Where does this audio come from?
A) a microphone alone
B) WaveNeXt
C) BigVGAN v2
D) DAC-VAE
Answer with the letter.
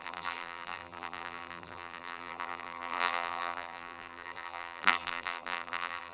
C